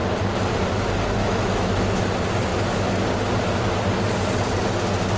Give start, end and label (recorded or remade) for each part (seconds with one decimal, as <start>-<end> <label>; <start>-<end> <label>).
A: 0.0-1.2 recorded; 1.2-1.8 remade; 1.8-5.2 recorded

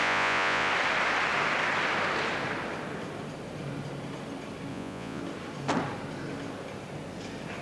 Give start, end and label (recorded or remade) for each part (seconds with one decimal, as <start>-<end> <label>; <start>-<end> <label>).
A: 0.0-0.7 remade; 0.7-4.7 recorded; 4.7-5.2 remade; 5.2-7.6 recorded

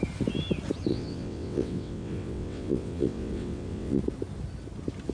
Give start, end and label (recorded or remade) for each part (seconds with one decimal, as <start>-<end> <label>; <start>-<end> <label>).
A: 0.0-0.9 recorded; 0.9-4.0 remade; 4.0-5.1 recorded

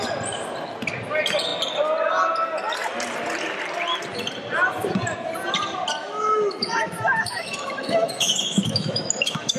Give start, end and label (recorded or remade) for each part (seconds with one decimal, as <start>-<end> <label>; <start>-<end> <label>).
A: 0.0-6.0 recorded; 6.0-9.6 remade

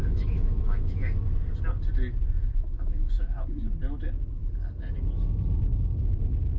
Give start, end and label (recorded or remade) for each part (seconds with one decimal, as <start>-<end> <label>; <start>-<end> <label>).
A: 0.0-1.0 remade; 1.0-2.4 recorded; 2.4-3.6 remade; 3.6-6.6 recorded

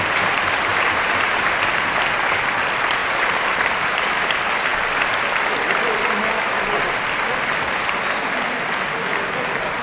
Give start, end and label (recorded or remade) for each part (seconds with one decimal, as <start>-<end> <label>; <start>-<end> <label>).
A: 0.0-0.7 recorded; 0.7-1.4 remade; 1.4-3.0 recorded; 3.0-4.1 remade; 4.1-9.8 recorded